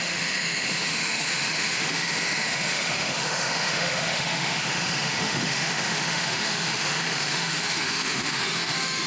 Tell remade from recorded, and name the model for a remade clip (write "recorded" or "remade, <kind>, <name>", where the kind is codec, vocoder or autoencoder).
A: remade, autoencoder, DAC-VAE